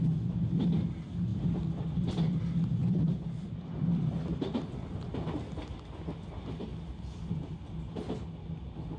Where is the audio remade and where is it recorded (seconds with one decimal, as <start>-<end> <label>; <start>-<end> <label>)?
0.0-2.8 recorded; 2.8-4.9 remade; 4.9-9.0 recorded